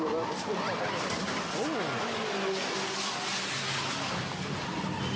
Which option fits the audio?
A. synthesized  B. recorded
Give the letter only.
B